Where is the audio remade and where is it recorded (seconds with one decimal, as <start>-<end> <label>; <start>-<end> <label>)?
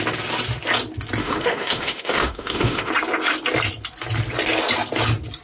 0.0-1.2 recorded; 1.2-2.9 remade; 2.9-5.4 recorded